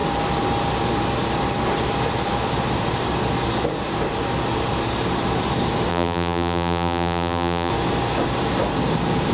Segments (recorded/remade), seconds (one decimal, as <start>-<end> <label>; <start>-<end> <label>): 0.0-5.9 recorded; 5.9-7.7 remade; 7.7-9.3 recorded